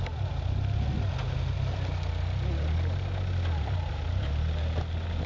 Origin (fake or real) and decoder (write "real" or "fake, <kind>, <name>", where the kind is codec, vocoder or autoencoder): real